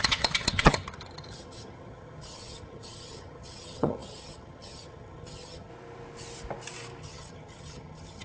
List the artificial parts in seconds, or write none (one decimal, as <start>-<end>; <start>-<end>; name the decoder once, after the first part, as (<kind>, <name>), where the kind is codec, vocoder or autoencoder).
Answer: 0.0-5.7 (vocoder, HiFi-GAN); 7.0-8.2